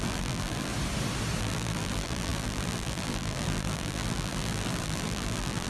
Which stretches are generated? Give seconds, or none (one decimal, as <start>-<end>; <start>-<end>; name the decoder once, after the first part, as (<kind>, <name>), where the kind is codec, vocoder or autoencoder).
0.0-0.7 (vocoder, BigVGAN v2); 1.4-5.7